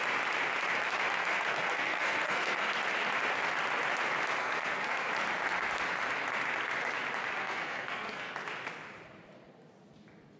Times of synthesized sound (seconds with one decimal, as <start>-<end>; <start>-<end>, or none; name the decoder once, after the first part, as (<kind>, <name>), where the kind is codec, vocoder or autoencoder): 1.2-2.7 (codec, SNAC); 4.4-5.1; 7.4-8.3